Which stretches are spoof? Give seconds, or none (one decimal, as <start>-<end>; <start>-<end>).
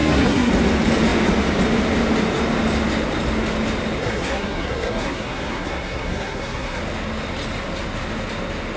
0.0-0.5; 4.0-6.8